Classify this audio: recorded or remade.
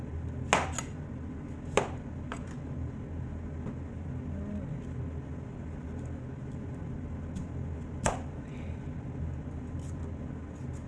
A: recorded